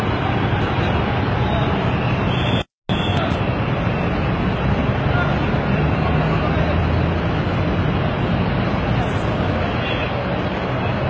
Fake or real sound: real